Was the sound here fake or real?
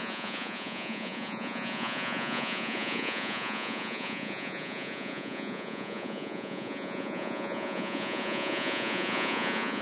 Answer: fake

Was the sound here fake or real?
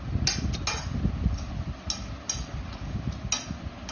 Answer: real